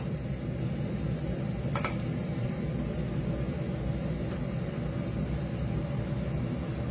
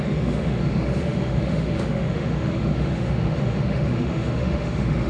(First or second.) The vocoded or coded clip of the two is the second